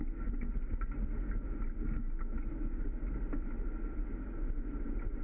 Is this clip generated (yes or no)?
no